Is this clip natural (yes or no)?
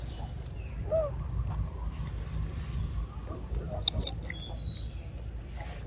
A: yes